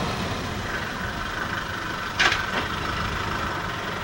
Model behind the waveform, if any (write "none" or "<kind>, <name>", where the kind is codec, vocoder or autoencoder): vocoder, BigVGAN v2